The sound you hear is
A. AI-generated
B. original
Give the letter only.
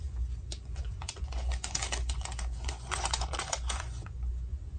A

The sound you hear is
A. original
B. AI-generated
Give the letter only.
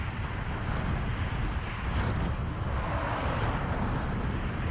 A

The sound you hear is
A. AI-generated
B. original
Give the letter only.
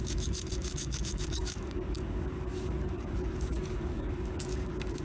A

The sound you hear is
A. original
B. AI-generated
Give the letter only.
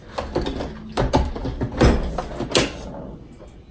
A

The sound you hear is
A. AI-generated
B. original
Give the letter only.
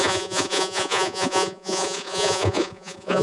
A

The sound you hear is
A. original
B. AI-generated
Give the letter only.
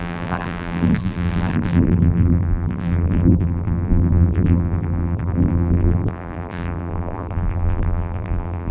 B